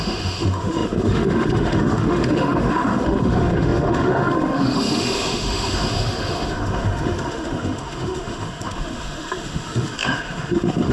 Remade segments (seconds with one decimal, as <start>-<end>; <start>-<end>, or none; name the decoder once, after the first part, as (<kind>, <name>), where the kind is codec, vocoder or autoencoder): 0.0-10.9 (autoencoder, DAC-VAE)